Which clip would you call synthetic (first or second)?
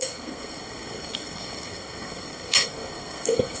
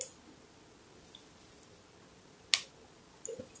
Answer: first